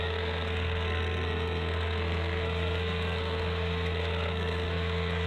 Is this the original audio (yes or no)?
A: no